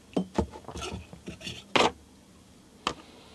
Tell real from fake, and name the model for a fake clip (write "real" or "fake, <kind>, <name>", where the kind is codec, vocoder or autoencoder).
real